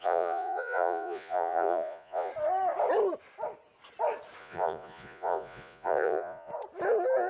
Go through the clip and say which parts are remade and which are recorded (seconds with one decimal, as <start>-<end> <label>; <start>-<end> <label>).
0.0-2.3 remade; 2.3-4.4 recorded; 4.4-6.5 remade; 6.5-7.3 recorded